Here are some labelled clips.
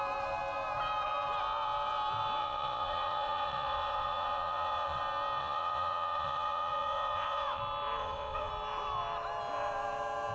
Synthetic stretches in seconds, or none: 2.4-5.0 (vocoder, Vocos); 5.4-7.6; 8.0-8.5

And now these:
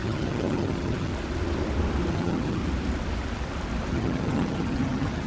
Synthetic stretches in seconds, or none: 0.0-1.1 (vocoder, HiFi-GAN); 2.1-2.6; 3.9-5.3

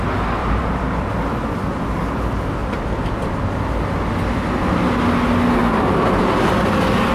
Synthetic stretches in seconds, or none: 0.4-1.1 (vocoder, BigVGAN v2); 2.6-3.3; 5.6-7.1

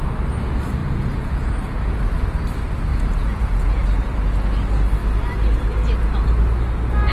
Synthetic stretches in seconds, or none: 0.8-2.0 (vocoder, Vocos); 2.9-4.1

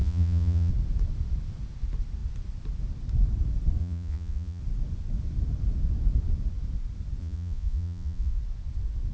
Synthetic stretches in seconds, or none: 0.0-0.7 (vocoder, Vocos); 3.8-4.6; 7.2-8.4